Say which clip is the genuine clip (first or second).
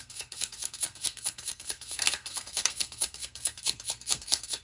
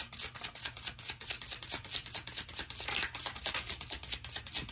second